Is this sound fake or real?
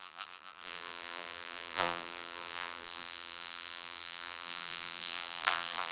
fake